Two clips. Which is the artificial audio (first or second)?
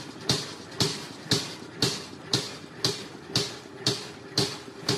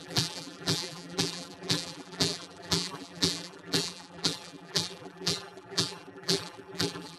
second